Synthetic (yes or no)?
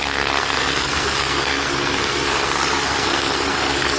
yes